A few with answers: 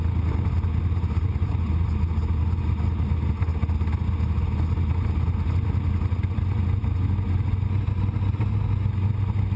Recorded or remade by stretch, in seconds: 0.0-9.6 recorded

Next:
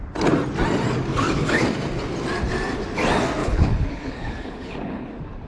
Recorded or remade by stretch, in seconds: 0.0-1.1 recorded; 1.1-1.6 remade; 1.6-3.4 recorded; 3.4-5.1 remade; 5.1-5.5 recorded

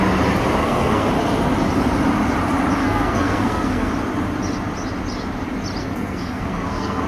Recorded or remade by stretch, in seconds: 0.0-0.6 recorded; 0.6-1.1 remade; 1.1-2.8 recorded; 2.8-3.9 remade; 3.9-5.8 recorded; 5.8-7.1 remade